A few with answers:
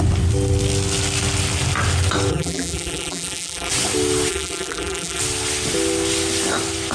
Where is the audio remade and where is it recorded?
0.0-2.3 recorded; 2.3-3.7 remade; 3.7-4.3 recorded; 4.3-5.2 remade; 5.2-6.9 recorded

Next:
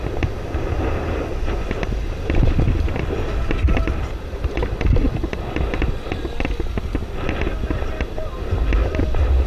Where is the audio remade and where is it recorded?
0.0-1.3 recorded; 1.3-5.0 remade; 5.0-9.5 recorded

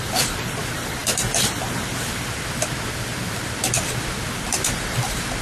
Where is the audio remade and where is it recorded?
0.0-5.4 remade

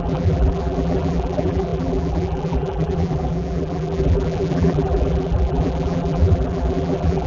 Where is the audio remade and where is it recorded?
0.0-7.3 remade

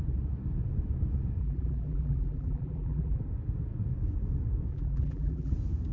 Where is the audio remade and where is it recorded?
0.0-1.4 recorded; 1.4-3.2 remade; 3.2-4.7 recorded; 4.7-5.5 remade; 5.5-5.9 recorded

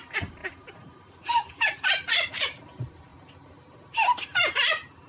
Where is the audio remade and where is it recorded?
0.0-0.4 remade; 0.4-1.0 recorded; 1.0-3.1 remade; 3.1-5.1 recorded

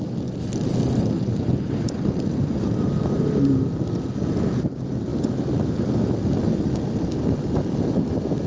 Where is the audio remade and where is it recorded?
0.0-8.5 recorded

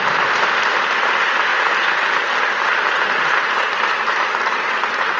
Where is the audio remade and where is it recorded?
0.0-5.2 recorded